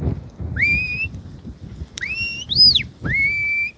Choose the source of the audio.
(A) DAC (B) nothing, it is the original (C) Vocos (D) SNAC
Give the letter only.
B